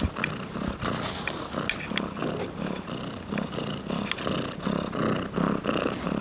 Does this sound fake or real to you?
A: real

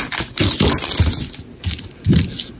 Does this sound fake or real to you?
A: real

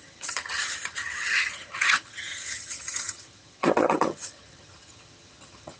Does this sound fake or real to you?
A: fake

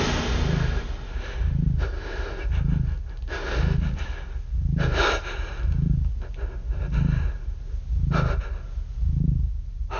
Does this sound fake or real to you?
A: real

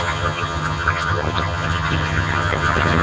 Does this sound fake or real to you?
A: fake